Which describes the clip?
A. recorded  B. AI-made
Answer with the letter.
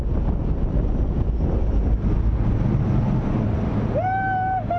A